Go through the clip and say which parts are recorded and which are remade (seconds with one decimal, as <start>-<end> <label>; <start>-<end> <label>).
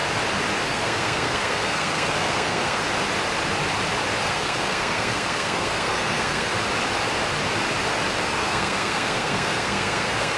0.0-0.7 recorded; 0.7-2.8 remade; 2.8-4.2 recorded; 4.2-6.5 remade; 6.5-8.3 recorded; 8.3-10.4 remade